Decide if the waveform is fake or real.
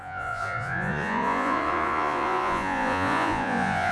fake